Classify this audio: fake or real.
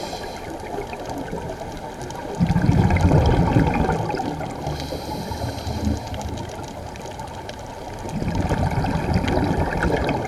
real